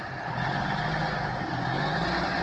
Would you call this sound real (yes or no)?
yes